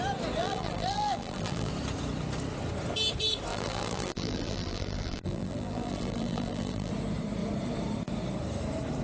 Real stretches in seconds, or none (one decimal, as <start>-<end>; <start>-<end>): 0.0-0.4; 1.7-3.5; 6.9-9.0